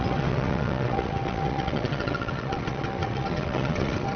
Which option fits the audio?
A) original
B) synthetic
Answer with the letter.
B